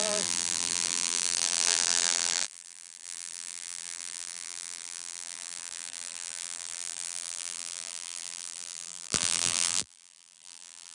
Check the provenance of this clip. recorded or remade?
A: remade